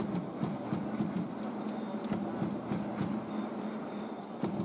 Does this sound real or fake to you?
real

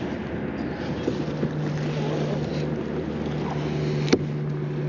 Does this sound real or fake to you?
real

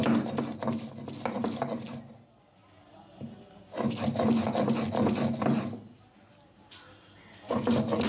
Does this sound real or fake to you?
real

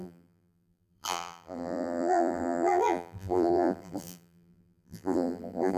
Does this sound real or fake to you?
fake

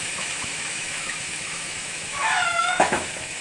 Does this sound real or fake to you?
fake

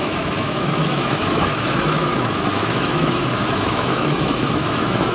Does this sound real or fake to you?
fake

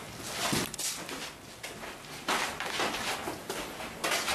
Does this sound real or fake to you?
real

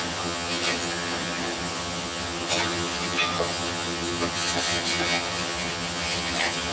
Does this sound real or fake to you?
fake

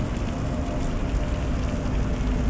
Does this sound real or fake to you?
real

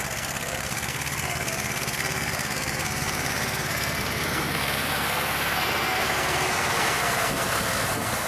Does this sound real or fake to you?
fake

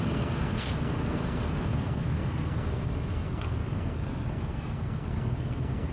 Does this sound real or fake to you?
fake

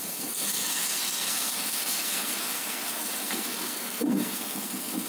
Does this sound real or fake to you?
fake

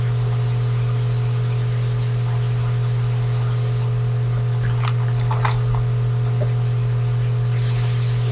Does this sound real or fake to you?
real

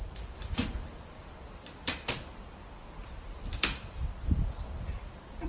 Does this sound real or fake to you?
fake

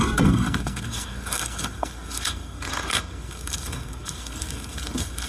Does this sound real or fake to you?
fake